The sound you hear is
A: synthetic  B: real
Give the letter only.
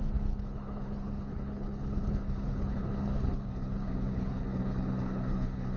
A